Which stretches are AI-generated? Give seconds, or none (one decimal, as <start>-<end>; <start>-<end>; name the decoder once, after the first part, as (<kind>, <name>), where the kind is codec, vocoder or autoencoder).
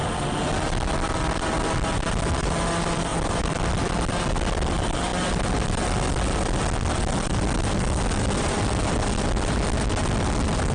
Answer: none